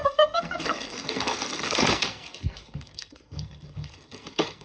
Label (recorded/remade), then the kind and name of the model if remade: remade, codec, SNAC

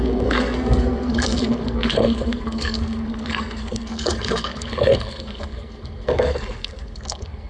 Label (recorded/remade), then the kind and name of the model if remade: remade, codec, SNAC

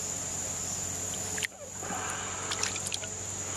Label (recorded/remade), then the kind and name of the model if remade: recorded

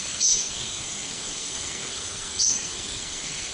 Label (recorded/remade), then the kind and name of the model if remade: remade, codec, SNAC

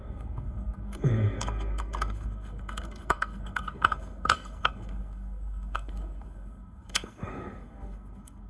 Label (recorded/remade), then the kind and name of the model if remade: remade, codec, SNAC